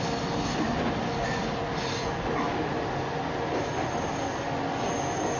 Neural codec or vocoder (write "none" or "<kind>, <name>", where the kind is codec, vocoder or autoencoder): none